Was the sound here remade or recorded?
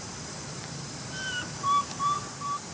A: remade